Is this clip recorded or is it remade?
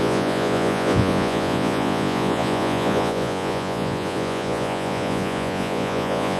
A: remade